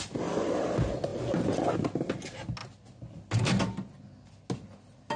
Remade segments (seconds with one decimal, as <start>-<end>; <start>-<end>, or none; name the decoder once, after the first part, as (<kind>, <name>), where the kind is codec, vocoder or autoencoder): none